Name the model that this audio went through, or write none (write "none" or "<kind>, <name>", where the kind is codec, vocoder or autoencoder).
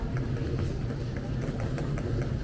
none